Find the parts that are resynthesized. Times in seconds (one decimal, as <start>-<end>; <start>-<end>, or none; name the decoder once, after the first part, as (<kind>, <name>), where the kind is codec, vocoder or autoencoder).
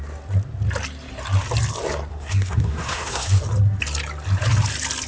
2.1-3.4 (codec, SNAC)